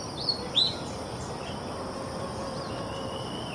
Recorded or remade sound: recorded